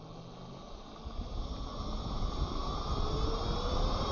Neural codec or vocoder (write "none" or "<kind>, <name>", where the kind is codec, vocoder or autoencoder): none